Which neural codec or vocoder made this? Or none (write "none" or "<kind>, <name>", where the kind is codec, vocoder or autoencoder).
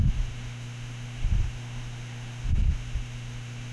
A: autoencoder, DAC-VAE